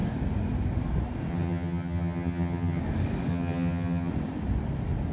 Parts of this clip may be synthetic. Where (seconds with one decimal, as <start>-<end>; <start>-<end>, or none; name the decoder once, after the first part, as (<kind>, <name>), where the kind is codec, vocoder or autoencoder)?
1.3-2.8 (vocoder, HiFi-GAN); 3.3-4.1